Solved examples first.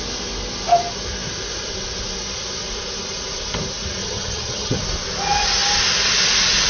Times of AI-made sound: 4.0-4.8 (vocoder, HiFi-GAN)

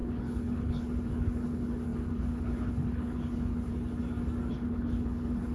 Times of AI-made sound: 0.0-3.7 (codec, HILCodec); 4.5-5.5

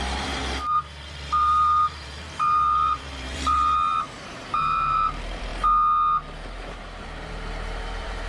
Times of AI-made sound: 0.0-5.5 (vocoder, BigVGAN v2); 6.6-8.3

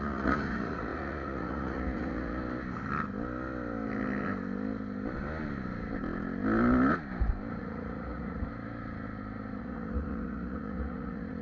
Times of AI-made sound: 0.0-2.4 (vocoder, Vocos); 7.6-8.5; 9.6-11.4

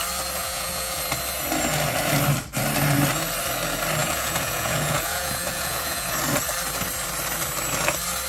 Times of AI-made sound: 0.4-1.0 (vocoder, Vocos); 4.0-6.1

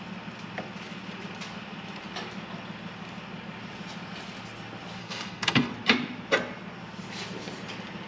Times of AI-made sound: 5.0-5.7 (codec, SNAC)

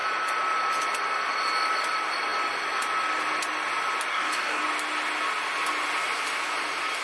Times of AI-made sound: 4.1-4.6 (codec, DAC)

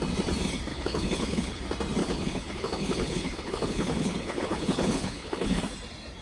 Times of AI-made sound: 0.7-1.6 (codec, HILCodec); 2.0-5.6